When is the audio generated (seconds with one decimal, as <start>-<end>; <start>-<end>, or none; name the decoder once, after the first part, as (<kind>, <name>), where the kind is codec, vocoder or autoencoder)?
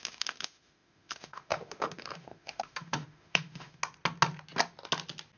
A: 0.0-3.8 (autoencoder, DAC-VAE)